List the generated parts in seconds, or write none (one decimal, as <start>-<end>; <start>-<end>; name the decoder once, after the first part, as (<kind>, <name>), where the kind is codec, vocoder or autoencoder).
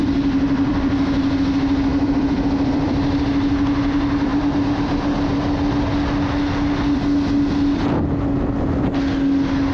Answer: 0.0-1.0 (vocoder, BigVGAN v2); 1.9-3.2; 4.3-5.7